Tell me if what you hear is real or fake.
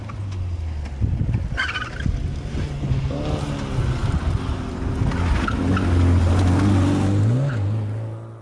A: real